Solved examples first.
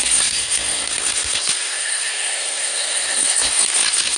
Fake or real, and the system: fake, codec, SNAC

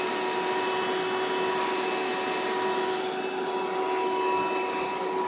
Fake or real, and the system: real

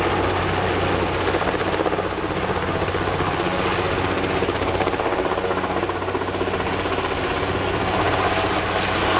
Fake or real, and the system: real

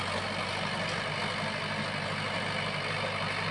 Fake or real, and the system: real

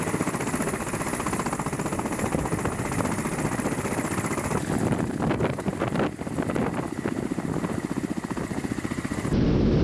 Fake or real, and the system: real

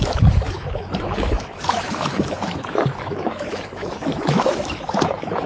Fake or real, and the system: fake, autoencoder, DAC-VAE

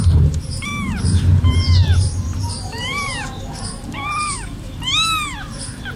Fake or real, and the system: fake, vocoder, BigVGAN v2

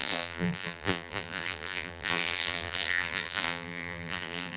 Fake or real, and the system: fake, vocoder, BigVGAN v2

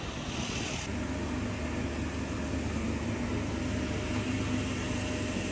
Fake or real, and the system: real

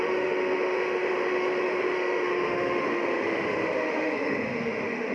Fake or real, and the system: fake, autoencoder, DAC-VAE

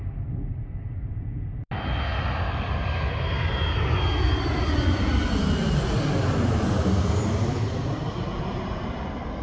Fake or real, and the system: real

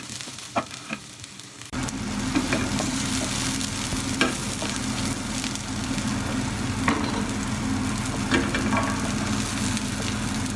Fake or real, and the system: real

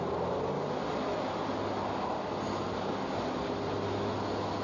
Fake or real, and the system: real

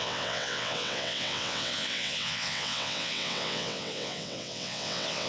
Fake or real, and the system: fake, vocoder, WaveNeXt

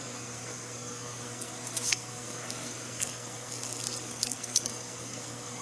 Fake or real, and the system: fake, codec, SNAC